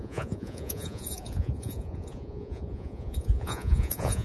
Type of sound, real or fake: fake